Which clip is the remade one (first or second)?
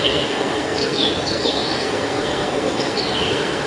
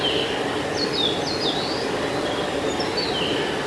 first